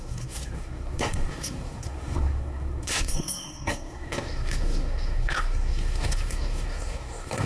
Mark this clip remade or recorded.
remade